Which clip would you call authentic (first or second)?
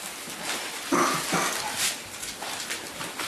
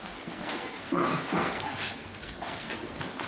first